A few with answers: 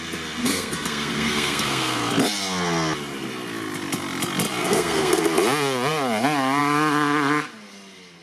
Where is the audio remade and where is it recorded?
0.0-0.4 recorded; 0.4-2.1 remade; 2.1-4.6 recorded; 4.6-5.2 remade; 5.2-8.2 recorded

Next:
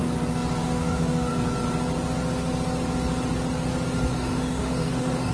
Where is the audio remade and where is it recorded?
0.0-0.6 recorded; 0.6-1.3 remade; 1.3-4.1 recorded; 4.1-5.3 remade